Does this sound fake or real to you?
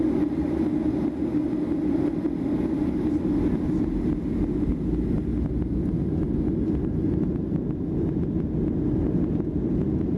real